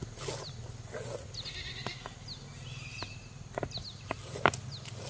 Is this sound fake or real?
real